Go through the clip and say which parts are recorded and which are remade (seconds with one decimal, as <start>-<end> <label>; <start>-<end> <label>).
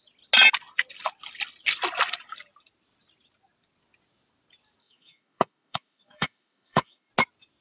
0.0-4.8 recorded; 4.8-7.1 remade; 7.1-7.6 recorded